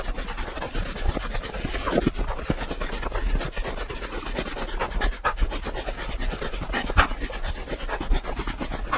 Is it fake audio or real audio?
real